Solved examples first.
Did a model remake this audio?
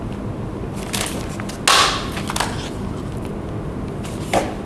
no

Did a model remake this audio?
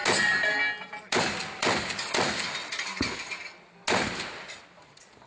no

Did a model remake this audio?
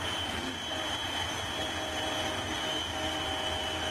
no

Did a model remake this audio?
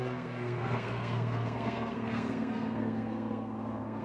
yes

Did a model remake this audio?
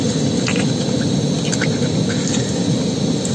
no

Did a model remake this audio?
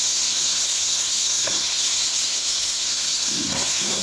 yes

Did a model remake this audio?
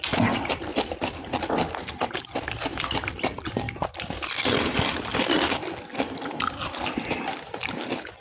no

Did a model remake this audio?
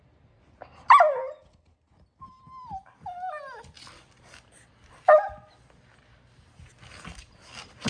no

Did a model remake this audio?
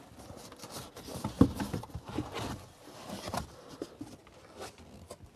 no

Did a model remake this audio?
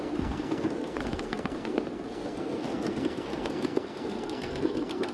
yes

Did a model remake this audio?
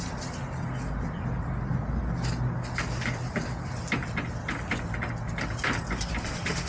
no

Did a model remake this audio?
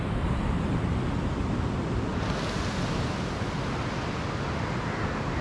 no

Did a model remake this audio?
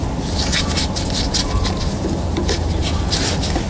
no